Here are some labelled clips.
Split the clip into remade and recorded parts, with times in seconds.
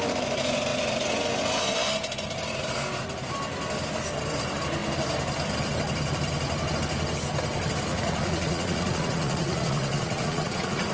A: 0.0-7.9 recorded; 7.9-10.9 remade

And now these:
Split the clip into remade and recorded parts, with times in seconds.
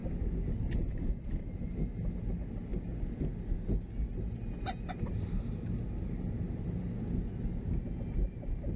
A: 0.0-8.8 recorded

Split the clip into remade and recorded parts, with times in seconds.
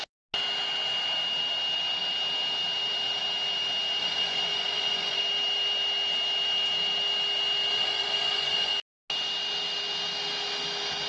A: 0.0-4.0 recorded; 4.0-5.2 remade; 5.2-7.7 recorded; 7.7-8.7 remade; 8.7-11.1 recorded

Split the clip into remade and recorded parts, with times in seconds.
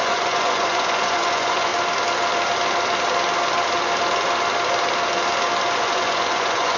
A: 0.0-1.7 remade; 1.7-5.8 recorded; 5.8-6.8 remade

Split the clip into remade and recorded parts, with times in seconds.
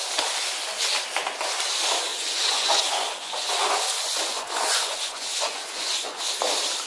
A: 0.0-2.1 recorded; 2.1-6.2 remade; 6.2-6.9 recorded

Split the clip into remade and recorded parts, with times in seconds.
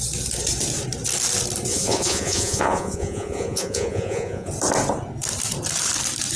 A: 0.0-1.7 recorded; 1.7-4.5 remade; 4.5-6.4 recorded